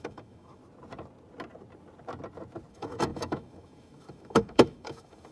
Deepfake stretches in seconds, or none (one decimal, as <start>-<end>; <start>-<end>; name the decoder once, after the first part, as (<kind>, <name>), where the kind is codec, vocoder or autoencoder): 0.0-0.6 (autoencoder, DAC-VAE); 2.7-5.3